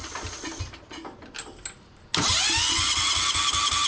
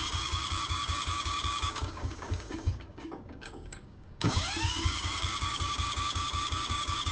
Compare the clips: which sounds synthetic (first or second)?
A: second